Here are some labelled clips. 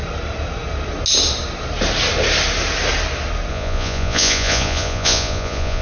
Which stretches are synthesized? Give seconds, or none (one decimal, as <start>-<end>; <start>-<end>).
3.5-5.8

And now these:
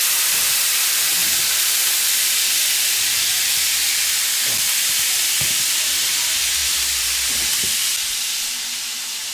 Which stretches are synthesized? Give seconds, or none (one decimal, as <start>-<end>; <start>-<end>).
none

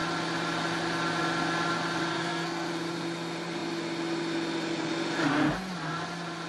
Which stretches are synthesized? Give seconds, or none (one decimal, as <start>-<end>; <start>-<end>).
2.1-2.7

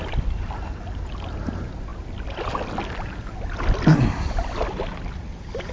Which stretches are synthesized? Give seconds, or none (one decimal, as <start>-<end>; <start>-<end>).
none

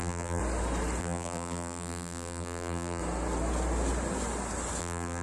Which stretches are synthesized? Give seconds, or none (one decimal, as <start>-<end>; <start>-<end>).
0.0-0.4; 1.0-3.0; 4.8-5.2

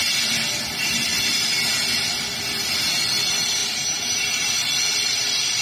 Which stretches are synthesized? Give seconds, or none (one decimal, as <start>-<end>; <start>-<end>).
3.6-4.5